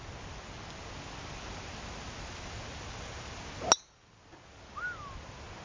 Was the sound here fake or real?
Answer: real